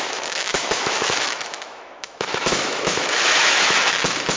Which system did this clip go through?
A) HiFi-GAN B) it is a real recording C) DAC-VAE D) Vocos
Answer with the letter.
C